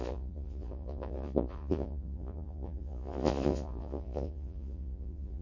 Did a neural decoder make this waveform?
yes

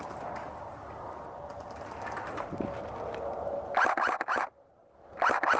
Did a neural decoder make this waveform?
no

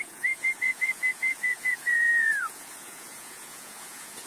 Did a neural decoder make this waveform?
yes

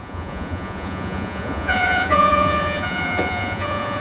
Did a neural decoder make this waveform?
yes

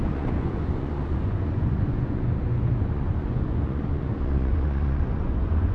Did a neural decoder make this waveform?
yes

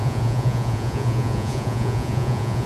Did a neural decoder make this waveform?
yes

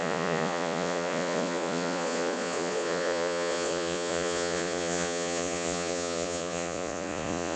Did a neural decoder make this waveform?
yes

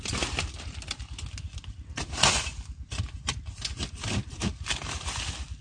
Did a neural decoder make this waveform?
no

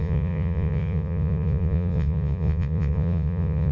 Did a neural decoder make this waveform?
yes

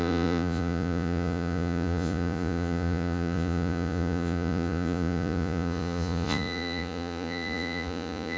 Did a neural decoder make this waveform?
yes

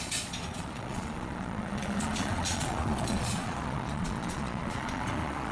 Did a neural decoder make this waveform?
yes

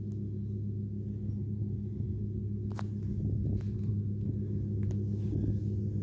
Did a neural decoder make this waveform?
no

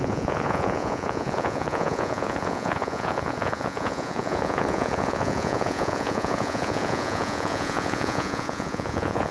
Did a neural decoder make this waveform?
yes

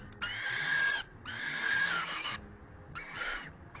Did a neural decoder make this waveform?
no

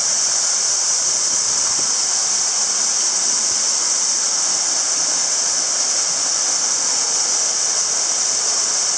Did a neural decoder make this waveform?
no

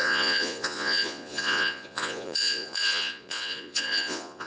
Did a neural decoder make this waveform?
yes